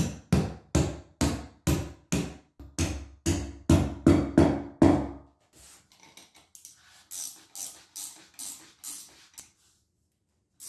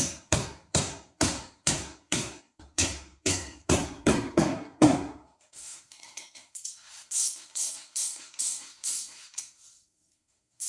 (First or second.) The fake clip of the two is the second